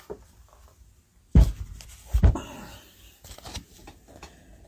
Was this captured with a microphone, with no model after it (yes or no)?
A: yes